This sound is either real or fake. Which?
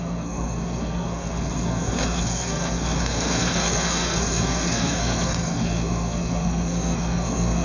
fake